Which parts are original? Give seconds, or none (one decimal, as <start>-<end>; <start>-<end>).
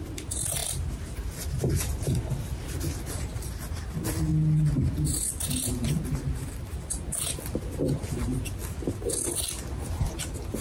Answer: 4.3-5.3